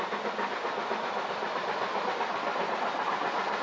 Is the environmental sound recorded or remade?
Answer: recorded